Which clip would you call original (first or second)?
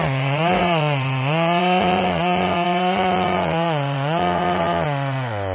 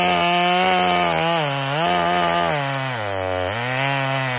second